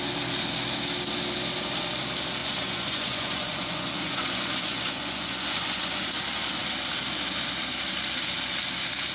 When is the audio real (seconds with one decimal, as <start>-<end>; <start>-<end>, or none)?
0.0-2.4; 6.1-9.1